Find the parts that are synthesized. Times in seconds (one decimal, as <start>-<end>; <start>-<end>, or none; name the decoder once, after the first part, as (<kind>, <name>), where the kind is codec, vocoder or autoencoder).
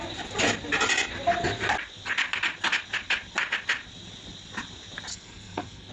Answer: 5.1-5.9 (codec, SNAC)